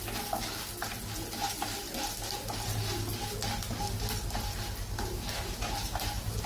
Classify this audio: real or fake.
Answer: real